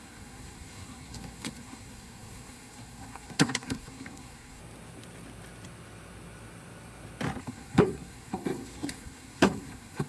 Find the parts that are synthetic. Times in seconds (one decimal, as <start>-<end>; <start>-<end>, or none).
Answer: 0.0-4.6; 7.4-10.1